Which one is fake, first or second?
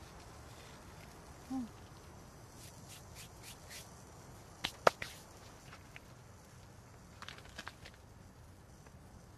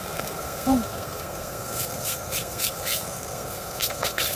second